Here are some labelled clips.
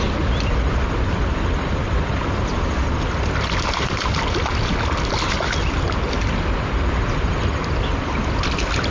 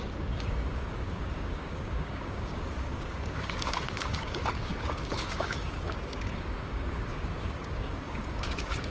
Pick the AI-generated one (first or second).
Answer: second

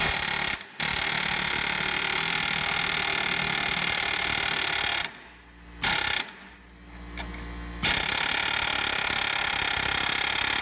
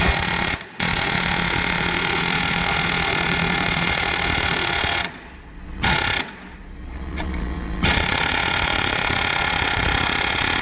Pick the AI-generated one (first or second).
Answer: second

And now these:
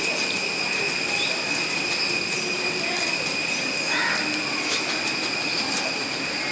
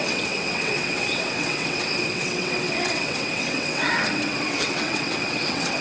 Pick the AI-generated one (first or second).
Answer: second